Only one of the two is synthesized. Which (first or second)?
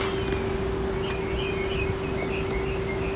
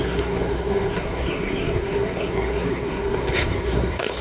second